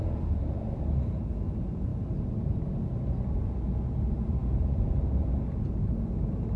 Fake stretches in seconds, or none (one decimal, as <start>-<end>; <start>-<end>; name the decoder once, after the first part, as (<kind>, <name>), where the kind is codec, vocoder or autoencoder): 0.0-1.9 (vocoder, Vocos); 3.3-6.6